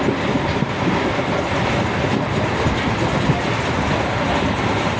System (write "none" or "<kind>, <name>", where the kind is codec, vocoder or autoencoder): none